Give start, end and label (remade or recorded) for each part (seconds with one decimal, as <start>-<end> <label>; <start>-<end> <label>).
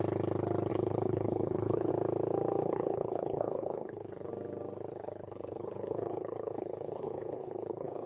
0.0-0.7 recorded; 0.7-1.9 remade; 1.9-2.6 recorded; 2.6-4.3 remade; 4.3-4.9 recorded; 4.9-8.1 remade